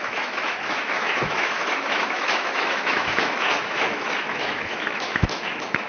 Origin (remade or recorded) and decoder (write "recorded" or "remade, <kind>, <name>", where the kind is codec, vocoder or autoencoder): remade, autoencoder, DAC-VAE